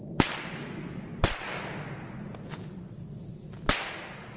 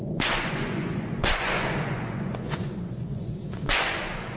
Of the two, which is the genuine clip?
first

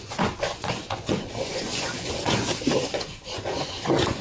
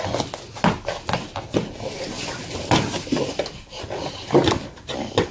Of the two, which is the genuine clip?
second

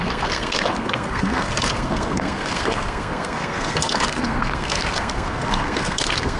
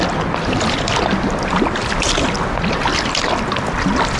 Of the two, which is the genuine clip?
second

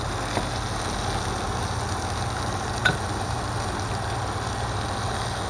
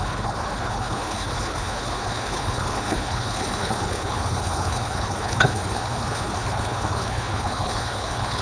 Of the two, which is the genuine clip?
first